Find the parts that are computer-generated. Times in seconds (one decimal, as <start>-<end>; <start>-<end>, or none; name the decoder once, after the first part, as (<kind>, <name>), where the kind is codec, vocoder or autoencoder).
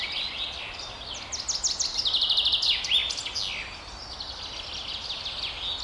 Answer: none